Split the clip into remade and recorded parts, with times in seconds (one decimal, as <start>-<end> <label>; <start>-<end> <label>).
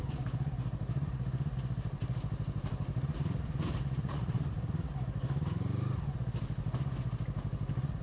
0.0-4.0 recorded; 4.0-4.7 remade; 4.7-8.0 recorded